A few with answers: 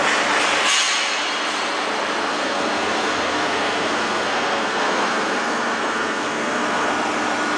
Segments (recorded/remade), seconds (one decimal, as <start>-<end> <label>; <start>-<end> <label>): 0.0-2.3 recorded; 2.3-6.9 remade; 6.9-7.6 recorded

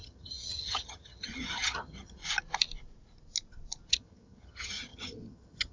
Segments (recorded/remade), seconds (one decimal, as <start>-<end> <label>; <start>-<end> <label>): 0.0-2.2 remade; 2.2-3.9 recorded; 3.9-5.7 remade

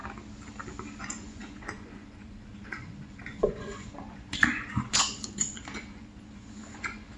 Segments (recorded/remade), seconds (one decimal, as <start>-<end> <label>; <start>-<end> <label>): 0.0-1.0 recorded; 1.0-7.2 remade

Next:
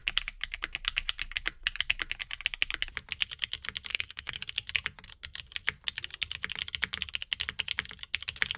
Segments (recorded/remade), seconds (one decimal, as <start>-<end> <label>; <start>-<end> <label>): 0.0-3.9 recorded; 3.9-4.4 remade; 4.4-8.6 recorded

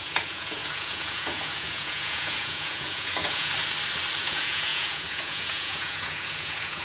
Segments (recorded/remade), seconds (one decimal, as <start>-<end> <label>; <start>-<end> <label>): 0.0-3.5 remade; 3.5-4.2 recorded; 4.2-6.8 remade

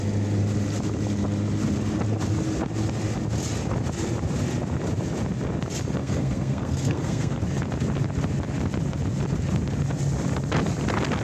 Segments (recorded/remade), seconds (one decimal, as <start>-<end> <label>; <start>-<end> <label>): 0.0-6.0 recorded; 6.0-7.4 remade; 7.4-11.2 recorded

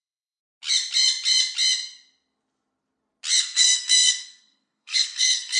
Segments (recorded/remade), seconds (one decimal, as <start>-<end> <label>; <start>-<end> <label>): 0.0-0.4 remade; 0.4-3.4 recorded; 3.4-5.6 remade

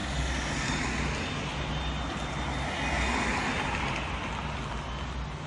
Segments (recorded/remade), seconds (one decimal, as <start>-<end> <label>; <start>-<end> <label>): 0.0-5.5 recorded